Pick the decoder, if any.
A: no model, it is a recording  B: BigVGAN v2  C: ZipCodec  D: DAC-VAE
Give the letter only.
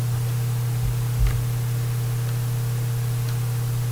A